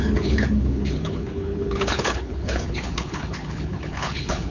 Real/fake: fake